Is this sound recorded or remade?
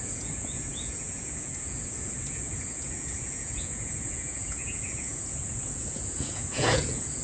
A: remade